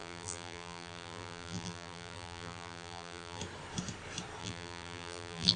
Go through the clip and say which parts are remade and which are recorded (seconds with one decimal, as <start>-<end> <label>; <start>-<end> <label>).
0.0-3.4 remade; 3.4-4.4 recorded; 4.4-5.6 remade